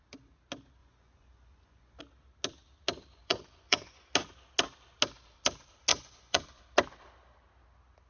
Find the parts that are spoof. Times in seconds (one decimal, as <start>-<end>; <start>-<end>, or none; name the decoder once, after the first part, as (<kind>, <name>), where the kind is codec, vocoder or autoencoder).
0.8-2.0 (vocoder, Vocos); 3.1-4.0; 5.9-6.6

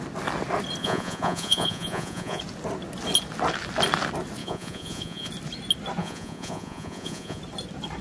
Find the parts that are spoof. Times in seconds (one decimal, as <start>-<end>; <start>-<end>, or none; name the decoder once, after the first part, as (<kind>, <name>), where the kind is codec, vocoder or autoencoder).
0.8-2.4 (vocoder, Vocos); 4.4-5.3; 6.0-7.4

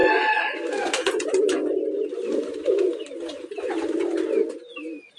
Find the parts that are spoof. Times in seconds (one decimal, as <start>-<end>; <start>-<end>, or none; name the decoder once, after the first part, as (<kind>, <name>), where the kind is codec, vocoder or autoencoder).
none

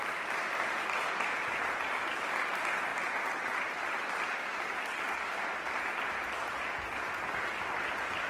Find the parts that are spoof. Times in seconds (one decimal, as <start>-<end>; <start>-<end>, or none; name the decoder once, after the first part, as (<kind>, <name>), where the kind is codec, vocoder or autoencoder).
none